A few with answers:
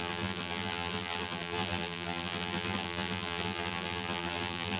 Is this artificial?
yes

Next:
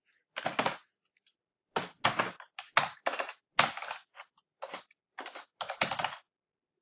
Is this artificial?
no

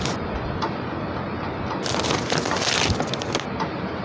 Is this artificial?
no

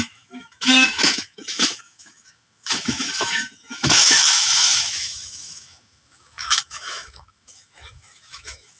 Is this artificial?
yes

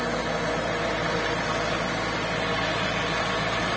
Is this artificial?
no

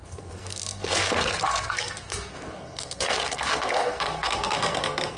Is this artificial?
yes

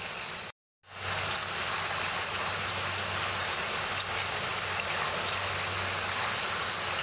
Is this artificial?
no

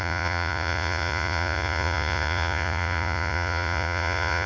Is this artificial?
yes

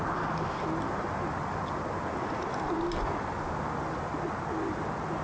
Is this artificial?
no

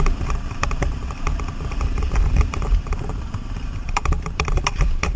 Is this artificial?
yes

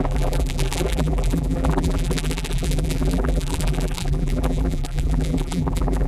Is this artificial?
yes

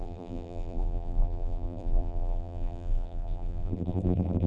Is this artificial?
yes